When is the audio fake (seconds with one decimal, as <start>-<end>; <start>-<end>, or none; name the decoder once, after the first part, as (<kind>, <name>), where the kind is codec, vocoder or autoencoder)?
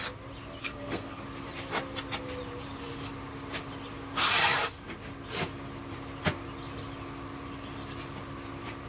0.6-1.2 (codec, SNAC)